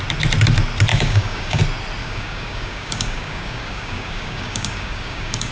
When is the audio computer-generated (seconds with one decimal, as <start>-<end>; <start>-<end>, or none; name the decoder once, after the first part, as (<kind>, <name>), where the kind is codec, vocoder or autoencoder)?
0.9-1.6 (codec, DAC); 2.0-5.5